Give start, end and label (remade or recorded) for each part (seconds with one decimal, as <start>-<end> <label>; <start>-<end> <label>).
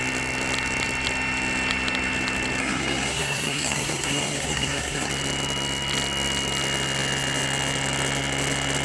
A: 0.0-2.6 recorded; 2.6-5.1 remade; 5.1-8.8 recorded